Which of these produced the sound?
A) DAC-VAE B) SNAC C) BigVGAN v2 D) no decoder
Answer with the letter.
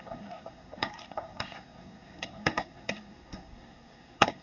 B